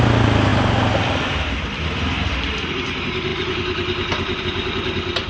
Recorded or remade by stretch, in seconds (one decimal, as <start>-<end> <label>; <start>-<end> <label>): 0.0-5.3 recorded